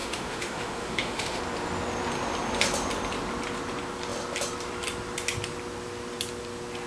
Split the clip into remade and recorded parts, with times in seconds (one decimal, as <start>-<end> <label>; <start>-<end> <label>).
0.0-1.4 remade; 1.4-6.9 recorded